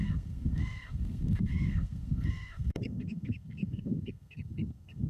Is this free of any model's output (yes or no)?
no